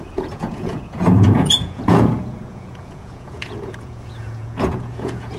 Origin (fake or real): fake